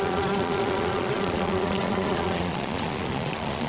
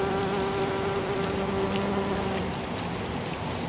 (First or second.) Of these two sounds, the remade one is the first